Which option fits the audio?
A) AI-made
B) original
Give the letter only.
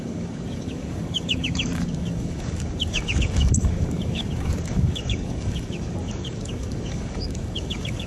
A